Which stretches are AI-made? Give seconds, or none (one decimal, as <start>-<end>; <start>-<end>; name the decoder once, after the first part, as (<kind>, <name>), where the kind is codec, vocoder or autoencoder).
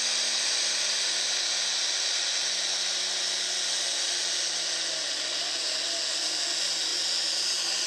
none